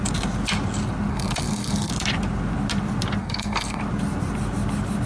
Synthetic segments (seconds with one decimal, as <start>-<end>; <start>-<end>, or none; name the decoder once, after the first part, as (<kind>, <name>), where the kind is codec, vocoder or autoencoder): 1.1-1.9 (codec, SNAC); 3.2-3.8